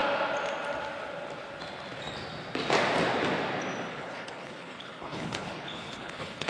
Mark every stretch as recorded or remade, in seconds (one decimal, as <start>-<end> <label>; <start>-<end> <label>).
0.0-3.9 recorded; 3.9-6.5 remade